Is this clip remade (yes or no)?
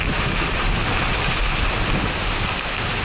no